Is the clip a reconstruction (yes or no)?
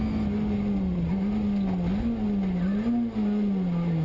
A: no